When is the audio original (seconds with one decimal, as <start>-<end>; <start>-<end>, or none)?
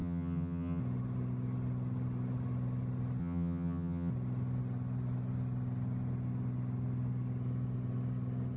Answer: 0.8-3.2; 4.1-8.6